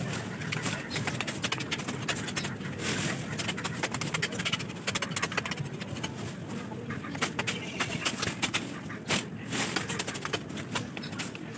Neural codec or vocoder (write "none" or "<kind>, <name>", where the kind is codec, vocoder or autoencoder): none